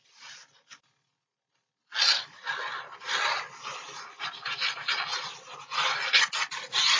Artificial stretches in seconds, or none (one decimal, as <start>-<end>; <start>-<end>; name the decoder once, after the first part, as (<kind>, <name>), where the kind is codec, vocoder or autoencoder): none